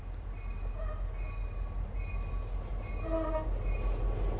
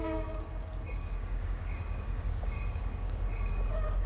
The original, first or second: first